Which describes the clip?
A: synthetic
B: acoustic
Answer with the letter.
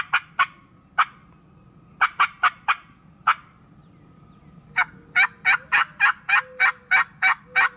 B